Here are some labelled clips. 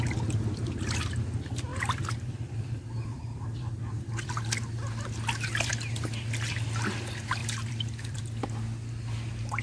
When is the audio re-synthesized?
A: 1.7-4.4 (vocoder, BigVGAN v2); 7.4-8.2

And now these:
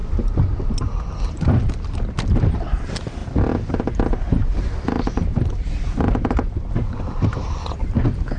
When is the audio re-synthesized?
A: none

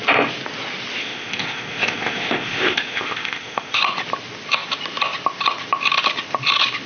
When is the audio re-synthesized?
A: 1.0-3.8 (codec, ZipCodec)

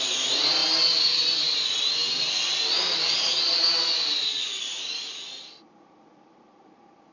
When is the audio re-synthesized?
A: none

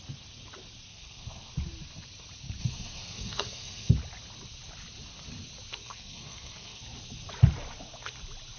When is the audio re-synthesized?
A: 0.9-1.5 (codec, SNAC); 2.6-3.9; 5.8-6.8

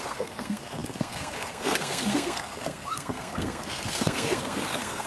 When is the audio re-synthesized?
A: 0.0-5.1 (codec, SNAC)

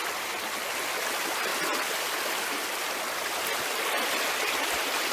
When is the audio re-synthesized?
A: none